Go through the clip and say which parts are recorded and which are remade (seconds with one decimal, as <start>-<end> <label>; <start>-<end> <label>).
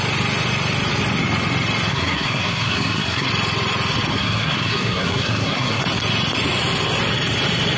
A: 0.0-1.9 recorded; 1.9-3.3 remade; 3.3-4.1 recorded; 4.1-5.8 remade; 5.8-7.8 recorded